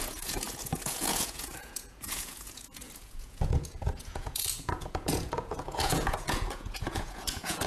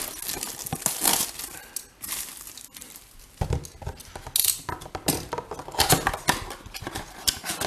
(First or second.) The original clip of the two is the second